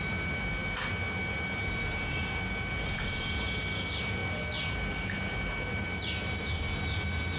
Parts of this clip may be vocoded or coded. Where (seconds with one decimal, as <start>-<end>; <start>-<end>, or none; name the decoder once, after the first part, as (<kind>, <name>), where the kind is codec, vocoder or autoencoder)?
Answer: none